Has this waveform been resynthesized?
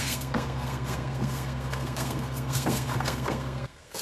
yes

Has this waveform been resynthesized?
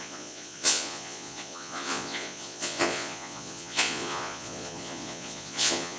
yes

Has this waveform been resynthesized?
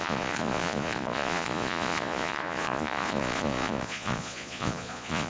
yes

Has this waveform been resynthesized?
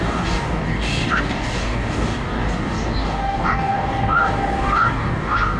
yes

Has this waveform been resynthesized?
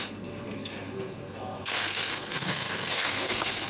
yes